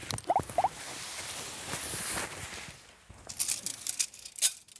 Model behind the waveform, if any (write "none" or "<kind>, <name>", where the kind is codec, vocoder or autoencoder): none